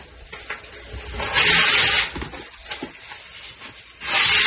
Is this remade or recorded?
recorded